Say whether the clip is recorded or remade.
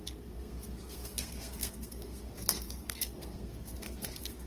remade